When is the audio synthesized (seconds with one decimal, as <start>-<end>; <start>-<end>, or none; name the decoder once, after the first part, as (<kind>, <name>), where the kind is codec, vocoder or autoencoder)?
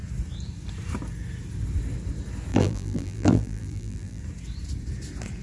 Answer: 2.5-4.2 (vocoder, BigVGAN v2)